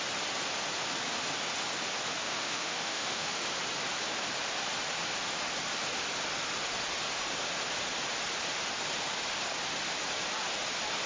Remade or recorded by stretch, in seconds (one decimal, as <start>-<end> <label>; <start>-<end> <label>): 0.0-2.2 recorded; 2.2-3.4 remade; 3.4-11.1 recorded